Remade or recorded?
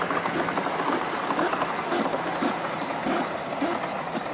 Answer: recorded